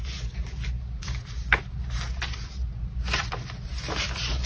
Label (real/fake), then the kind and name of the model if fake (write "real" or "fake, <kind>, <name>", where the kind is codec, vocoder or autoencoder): real